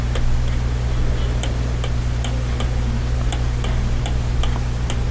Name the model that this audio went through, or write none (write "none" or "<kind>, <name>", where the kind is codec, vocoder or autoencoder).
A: none